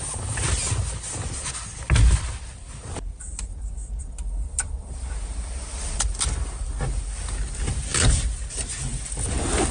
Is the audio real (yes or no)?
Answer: yes